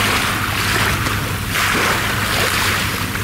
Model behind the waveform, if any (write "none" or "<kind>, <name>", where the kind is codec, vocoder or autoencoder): none